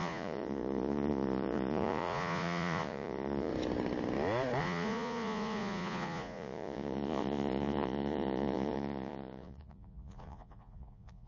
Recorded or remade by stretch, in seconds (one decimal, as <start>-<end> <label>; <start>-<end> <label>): 0.0-3.5 remade; 3.5-4.6 recorded; 4.6-11.3 remade